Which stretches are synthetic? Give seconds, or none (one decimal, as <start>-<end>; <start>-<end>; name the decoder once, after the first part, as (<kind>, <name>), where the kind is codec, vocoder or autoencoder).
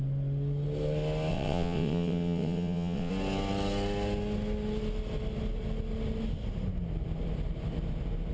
1.3-3.1 (vocoder, WaveNeXt)